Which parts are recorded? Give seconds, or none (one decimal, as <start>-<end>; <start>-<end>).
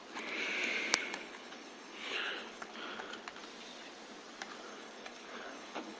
0.0-1.0; 2.7-4.7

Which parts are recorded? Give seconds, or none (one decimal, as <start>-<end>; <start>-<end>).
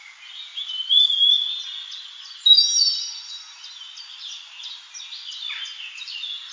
0.0-6.5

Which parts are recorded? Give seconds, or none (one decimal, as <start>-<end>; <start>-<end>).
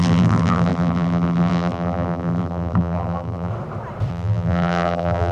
3.5-4.1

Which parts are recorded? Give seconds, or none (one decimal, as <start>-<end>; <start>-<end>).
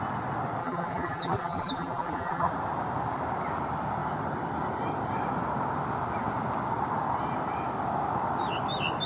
0.0-0.6; 2.5-9.1